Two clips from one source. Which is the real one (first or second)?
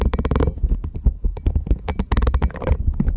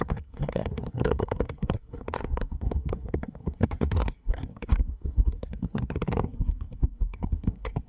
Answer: first